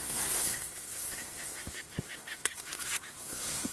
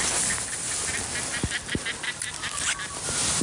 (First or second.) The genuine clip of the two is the second